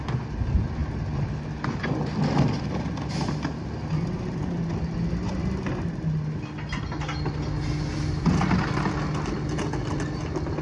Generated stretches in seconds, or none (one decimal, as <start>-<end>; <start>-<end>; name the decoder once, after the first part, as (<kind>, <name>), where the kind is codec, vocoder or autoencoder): none